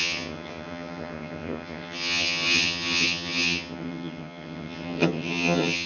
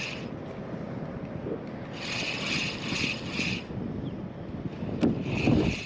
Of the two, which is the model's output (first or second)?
first